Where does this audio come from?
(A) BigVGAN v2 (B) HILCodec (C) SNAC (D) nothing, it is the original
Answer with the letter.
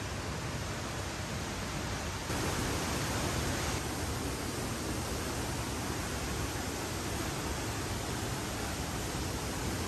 D